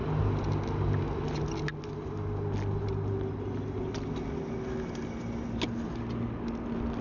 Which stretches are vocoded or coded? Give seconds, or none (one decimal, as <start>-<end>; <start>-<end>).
none

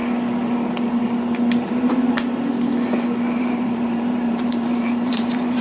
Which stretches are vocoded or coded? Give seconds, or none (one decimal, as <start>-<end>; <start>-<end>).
3.4-5.6

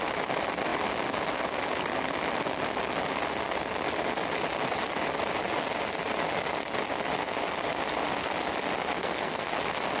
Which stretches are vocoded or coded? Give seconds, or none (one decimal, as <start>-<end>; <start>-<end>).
9.0-9.5

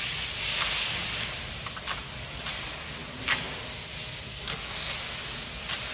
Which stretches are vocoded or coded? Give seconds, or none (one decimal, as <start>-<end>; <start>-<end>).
4.3-4.9

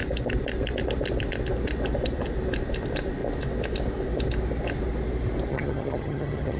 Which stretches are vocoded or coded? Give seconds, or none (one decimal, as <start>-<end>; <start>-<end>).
5.5-6.6

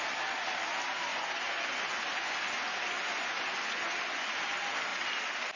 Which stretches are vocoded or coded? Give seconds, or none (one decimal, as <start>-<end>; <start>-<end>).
1.1-4.5